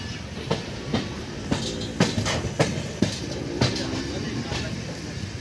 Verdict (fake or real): real